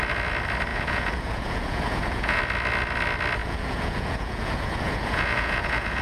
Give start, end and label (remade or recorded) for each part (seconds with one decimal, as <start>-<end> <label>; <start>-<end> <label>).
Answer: 0.0-0.7 recorded; 0.7-2.4 remade; 2.4-3.4 recorded; 3.4-6.0 remade